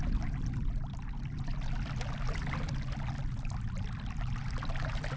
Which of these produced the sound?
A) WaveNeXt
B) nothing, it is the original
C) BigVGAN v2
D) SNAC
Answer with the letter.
B